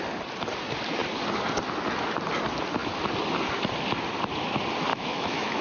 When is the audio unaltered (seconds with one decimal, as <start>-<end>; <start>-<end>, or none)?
0.0-4.9